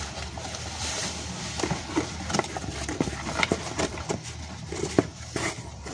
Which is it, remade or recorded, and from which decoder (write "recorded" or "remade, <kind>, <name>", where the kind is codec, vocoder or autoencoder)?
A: recorded